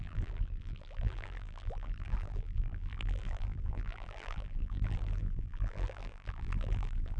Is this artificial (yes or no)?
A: yes